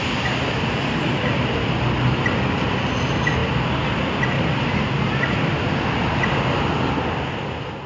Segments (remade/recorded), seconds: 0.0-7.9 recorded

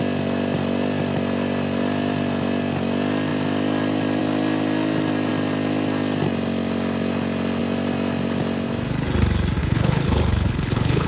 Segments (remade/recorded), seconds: 0.0-9.6 recorded; 9.6-11.1 remade

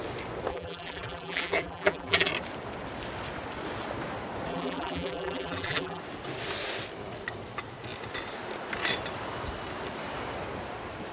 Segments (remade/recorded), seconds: 0.0-0.5 recorded; 0.5-2.3 remade; 2.3-4.5 recorded; 4.5-6.0 remade; 6.0-11.1 recorded

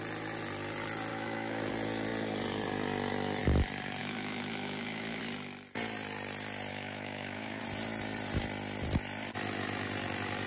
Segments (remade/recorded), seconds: 0.0-1.1 recorded; 1.1-1.7 remade; 1.7-4.0 recorded; 4.0-5.2 remade; 5.2-6.7 recorded; 6.7-7.6 remade; 7.6-10.5 recorded

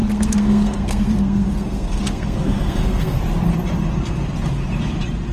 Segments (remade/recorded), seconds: 0.0-3.2 remade; 3.2-5.3 recorded

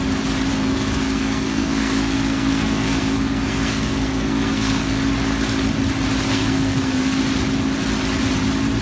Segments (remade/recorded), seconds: 0.0-0.5 recorded; 0.5-5.0 remade; 5.0-6.3 recorded; 6.3-7.2 remade; 7.2-8.8 recorded

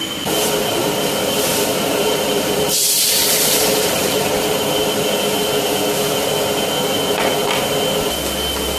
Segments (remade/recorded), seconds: 0.0-1.5 recorded; 1.5-4.3 remade; 4.3-8.8 recorded